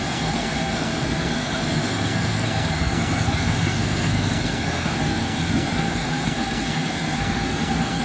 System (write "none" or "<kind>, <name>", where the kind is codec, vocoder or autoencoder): codec, SNAC